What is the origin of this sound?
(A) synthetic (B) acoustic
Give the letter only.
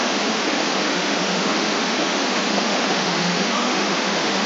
A